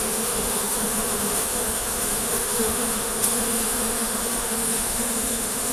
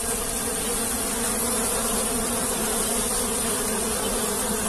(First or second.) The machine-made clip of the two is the first